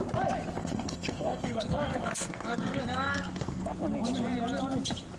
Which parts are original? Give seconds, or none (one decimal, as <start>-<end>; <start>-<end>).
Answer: 0.0-0.6; 3.7-5.2